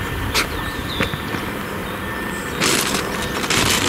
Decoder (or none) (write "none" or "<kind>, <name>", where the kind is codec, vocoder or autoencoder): vocoder, BigVGAN v2